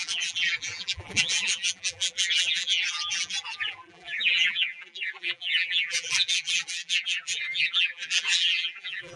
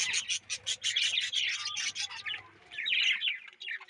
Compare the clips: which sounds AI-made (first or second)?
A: first